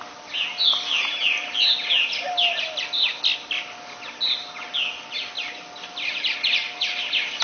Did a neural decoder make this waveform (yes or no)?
no